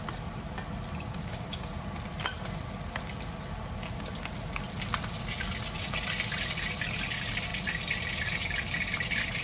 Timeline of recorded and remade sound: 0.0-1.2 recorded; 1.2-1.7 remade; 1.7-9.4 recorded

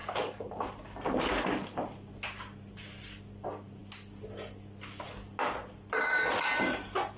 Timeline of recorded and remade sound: 0.0-0.5 remade; 0.5-7.2 recorded

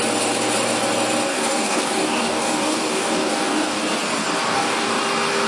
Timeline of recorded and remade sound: 0.0-1.3 recorded; 1.3-3.8 remade; 3.8-4.5 recorded; 4.5-5.0 remade; 5.0-5.5 recorded

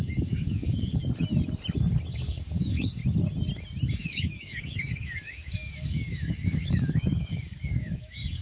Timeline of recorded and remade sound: 0.0-1.0 remade; 1.0-2.1 recorded; 2.1-3.0 remade; 3.0-3.9 recorded; 3.9-8.4 remade

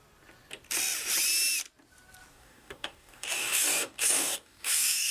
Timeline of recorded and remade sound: 0.0-2.3 recorded; 2.3-5.1 remade

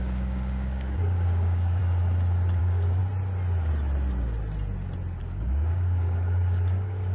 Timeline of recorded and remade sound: 0.0-1.8 remade; 1.8-2.6 recorded; 2.6-3.0 remade; 3.0-5.2 recorded; 5.2-7.1 remade

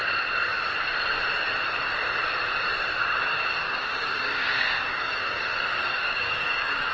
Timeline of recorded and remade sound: 0.0-3.3 recorded; 3.3-5.4 remade; 5.4-5.9 recorded; 5.9-6.9 remade